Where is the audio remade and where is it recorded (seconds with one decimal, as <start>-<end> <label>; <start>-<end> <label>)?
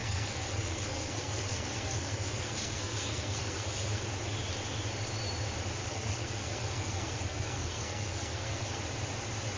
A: 0.0-4.1 remade; 4.1-5.8 recorded; 5.8-8.8 remade; 8.8-9.6 recorded